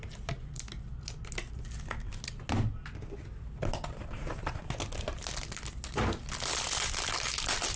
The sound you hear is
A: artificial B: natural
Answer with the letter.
B